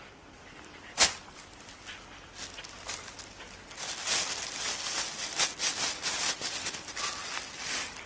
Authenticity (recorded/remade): recorded